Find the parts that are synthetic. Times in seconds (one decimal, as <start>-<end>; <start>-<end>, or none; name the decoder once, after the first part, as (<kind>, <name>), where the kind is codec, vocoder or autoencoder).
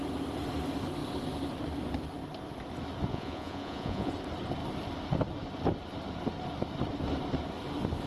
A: 3.1-4.1 (vocoder, Vocos)